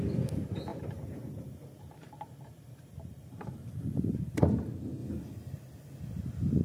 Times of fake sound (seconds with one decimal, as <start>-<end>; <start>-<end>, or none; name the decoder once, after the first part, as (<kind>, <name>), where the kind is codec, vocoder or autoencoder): 0.7-4.4 (vocoder, BigVGAN v2)